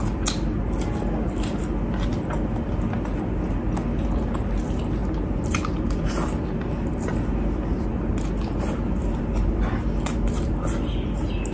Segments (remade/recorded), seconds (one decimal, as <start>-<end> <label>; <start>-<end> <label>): 0.0-11.5 recorded